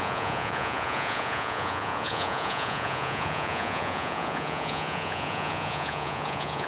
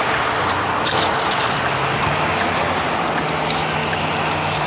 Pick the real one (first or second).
second